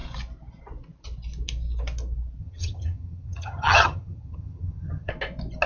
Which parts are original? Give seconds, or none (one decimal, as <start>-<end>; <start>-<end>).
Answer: 0.0-2.4; 5.1-5.7